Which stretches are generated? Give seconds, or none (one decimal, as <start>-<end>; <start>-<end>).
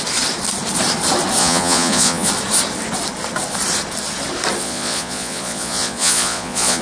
1.4-2.3; 4.6-6.8